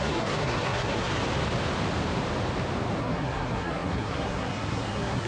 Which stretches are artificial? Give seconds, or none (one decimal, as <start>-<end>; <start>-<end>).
0.0-1.2; 3.0-5.3